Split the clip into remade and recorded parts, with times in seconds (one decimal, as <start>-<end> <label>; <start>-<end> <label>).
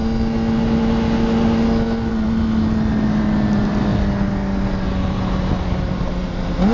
0.0-6.7 recorded